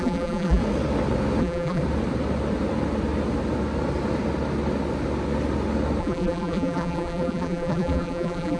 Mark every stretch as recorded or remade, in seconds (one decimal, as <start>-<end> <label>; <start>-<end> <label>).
0.0-0.6 remade; 0.6-1.4 recorded; 1.4-1.8 remade; 1.8-6.0 recorded; 6.0-8.6 remade

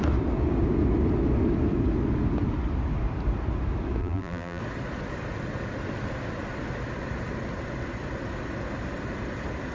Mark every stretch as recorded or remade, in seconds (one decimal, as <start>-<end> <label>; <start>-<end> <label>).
0.0-4.0 recorded; 4.0-4.6 remade; 4.6-9.7 recorded